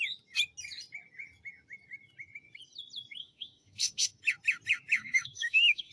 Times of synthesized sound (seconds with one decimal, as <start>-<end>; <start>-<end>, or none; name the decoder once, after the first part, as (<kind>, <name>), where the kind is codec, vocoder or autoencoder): 3.2-4.2 (autoencoder, DAC-VAE); 5.0-5.9